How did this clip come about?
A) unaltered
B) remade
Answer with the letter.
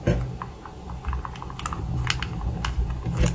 A